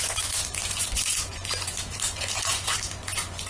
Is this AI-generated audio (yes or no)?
yes